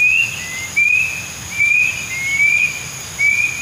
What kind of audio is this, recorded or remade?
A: recorded